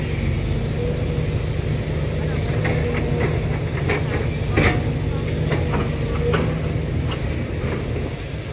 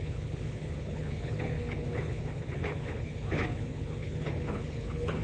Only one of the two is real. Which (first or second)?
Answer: first